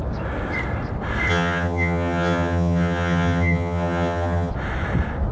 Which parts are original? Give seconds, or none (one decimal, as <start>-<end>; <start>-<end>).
0.0-1.3; 4.5-5.3